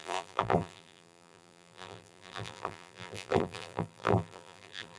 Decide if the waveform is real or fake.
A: fake